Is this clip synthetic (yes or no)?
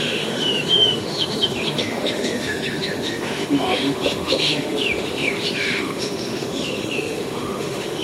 yes